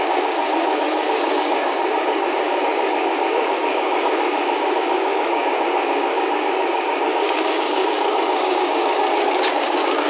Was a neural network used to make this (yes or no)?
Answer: yes